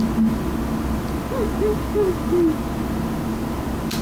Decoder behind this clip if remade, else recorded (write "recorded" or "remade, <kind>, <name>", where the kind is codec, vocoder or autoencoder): recorded